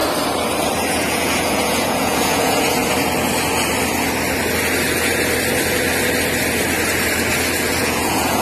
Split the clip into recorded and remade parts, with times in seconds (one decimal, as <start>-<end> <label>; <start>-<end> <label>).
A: 0.0-0.9 recorded; 0.9-2.8 remade; 2.8-7.8 recorded; 7.8-8.4 remade